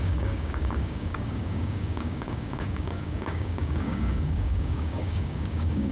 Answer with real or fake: fake